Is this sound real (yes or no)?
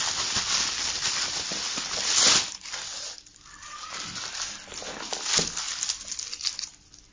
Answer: yes